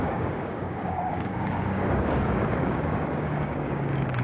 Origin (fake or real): fake